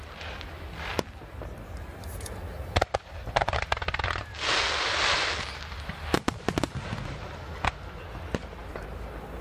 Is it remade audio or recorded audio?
recorded